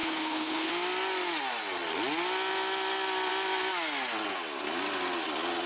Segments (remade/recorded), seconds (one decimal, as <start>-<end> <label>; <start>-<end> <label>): 0.0-0.7 remade; 0.7-5.7 recorded